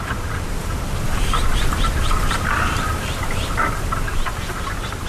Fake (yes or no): no